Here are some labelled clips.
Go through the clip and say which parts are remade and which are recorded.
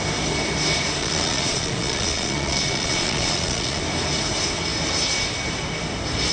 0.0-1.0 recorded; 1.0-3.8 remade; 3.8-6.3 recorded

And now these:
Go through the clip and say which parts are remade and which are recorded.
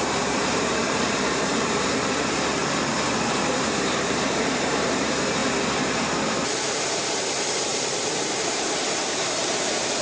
0.0-2.6 remade; 2.6-3.3 recorded; 3.3-5.4 remade; 5.4-6.6 recorded; 6.6-10.0 remade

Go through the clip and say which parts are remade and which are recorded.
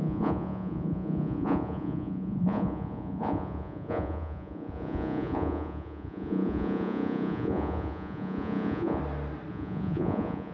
0.0-9.0 remade; 9.0-9.5 recorded; 9.5-10.5 remade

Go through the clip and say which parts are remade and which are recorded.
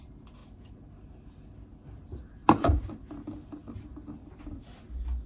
0.0-2.4 recorded; 2.4-2.9 remade; 2.9-5.3 recorded